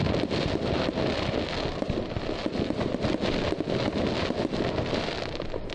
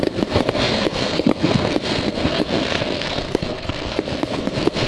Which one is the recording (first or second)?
first